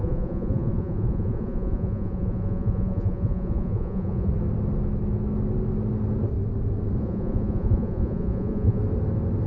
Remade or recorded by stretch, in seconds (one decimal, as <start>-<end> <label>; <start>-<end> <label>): 0.0-4.3 remade; 4.3-7.0 recorded; 7.0-8.8 remade; 8.8-9.5 recorded